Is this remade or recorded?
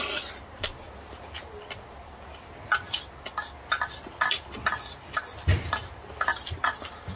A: recorded